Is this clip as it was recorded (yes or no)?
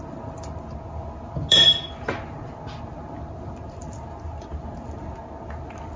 yes